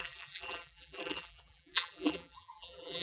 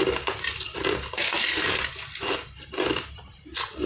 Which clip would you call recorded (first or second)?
second